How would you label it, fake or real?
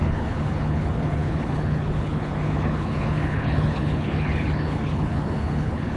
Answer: fake